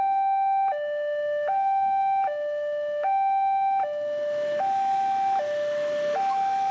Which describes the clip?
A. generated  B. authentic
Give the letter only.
A